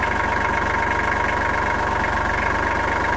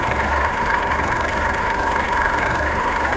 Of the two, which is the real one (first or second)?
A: first